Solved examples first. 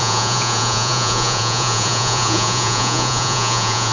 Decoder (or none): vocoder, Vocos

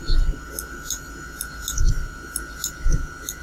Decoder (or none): none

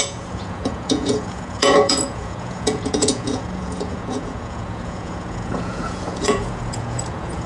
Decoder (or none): vocoder, Vocos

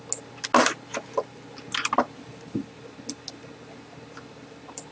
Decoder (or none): none